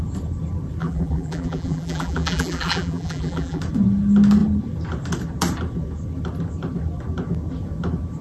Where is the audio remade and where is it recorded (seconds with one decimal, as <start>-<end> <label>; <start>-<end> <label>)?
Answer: 0.0-0.8 recorded; 0.8-3.6 remade; 3.6-8.2 recorded

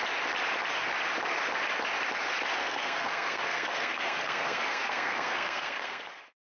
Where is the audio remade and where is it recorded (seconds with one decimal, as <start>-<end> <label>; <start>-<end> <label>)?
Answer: 0.0-2.6 recorded; 2.6-6.0 remade; 6.0-6.5 recorded

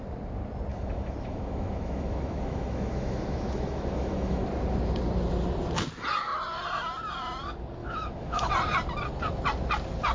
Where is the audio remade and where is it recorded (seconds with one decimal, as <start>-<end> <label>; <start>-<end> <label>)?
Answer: 0.0-0.7 recorded; 0.7-4.4 remade; 4.4-7.8 recorded; 7.8-8.5 remade; 8.5-10.1 recorded